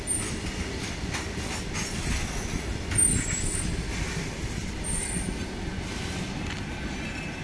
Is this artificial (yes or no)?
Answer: no